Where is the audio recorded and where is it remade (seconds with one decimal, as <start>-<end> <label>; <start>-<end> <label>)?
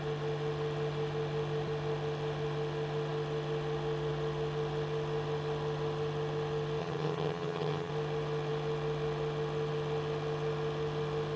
0.0-6.8 recorded; 6.8-7.9 remade; 7.9-11.4 recorded